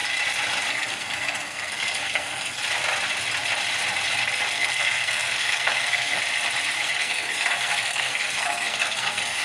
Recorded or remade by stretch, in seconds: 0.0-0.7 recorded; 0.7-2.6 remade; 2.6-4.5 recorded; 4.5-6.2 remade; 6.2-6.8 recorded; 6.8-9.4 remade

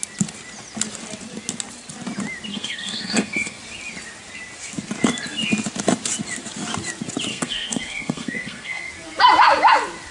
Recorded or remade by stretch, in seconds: 0.0-2.5 recorded; 2.5-3.6 remade; 3.6-7.3 recorded; 7.3-8.9 remade; 8.9-10.1 recorded

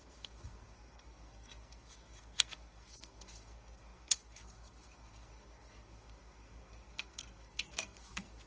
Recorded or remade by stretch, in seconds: 0.0-8.5 remade

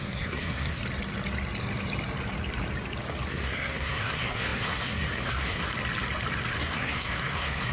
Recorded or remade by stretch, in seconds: 0.0-0.8 remade; 0.8-3.3 recorded; 3.3-5.7 remade; 5.7-6.6 recorded; 6.6-7.7 remade

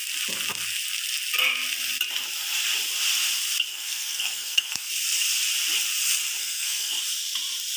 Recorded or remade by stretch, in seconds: 0.0-3.7 recorded; 3.7-4.9 remade; 4.9-6.4 recorded; 6.4-6.9 remade; 6.9-7.8 recorded